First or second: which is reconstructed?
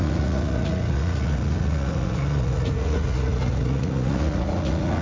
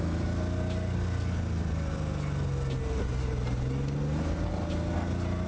first